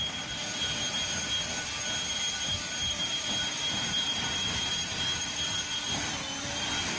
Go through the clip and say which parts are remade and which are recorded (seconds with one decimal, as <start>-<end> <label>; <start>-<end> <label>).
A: 0.0-2.8 recorded; 2.8-6.5 remade; 6.5-7.0 recorded